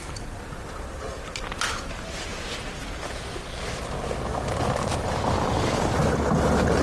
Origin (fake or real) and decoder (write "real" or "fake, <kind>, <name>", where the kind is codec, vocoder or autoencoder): real